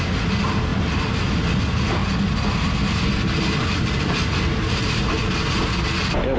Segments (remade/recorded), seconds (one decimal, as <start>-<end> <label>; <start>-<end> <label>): 0.0-6.4 recorded